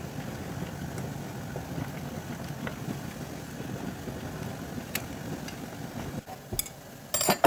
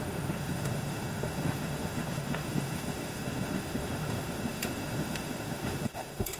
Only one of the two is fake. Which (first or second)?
second